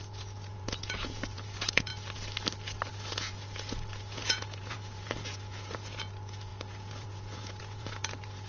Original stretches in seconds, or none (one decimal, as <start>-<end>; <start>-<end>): 1.9-2.9